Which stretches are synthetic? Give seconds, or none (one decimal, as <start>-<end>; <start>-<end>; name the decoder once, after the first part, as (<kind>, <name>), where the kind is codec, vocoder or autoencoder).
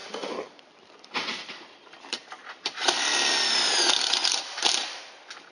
0.0-3.3 (vocoder, BigVGAN v2); 4.2-5.1